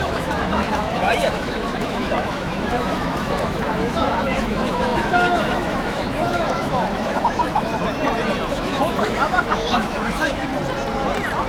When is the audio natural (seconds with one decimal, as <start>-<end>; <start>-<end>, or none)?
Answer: 7.7-8.5; 10.5-11.5